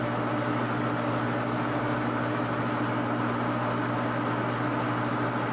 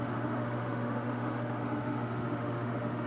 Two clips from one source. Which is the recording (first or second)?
first